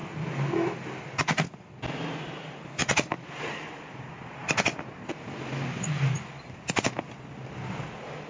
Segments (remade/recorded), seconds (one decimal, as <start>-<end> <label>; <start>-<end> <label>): 0.0-8.3 recorded